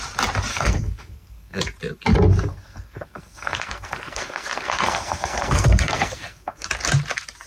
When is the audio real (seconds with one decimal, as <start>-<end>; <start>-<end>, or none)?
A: 0.0-0.5; 1.6-2.5; 6.7-7.5

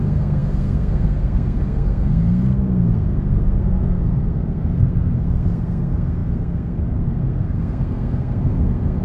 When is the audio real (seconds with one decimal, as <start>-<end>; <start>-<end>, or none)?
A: none

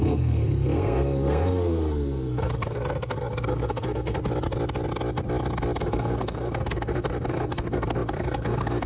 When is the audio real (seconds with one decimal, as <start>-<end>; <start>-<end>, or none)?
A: 4.2-5.8

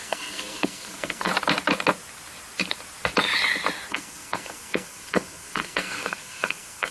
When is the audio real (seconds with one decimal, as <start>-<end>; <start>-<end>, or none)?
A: 1.3-3.9

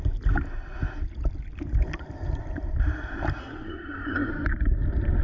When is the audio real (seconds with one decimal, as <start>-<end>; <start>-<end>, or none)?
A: 0.0-3.4; 4.3-5.2